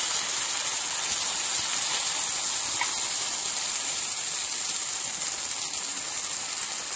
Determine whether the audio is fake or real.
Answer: real